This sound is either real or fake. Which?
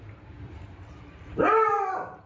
fake